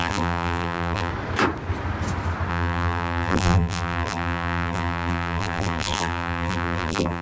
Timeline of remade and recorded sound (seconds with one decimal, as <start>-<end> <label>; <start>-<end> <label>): 0.0-1.1 remade; 1.1-2.5 recorded; 2.5-7.2 remade